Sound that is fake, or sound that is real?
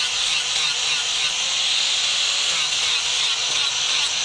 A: real